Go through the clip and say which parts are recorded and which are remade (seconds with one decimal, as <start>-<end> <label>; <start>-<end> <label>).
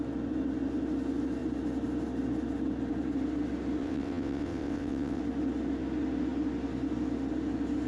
0.0-3.8 recorded; 3.8-5.2 remade; 5.2-7.9 recorded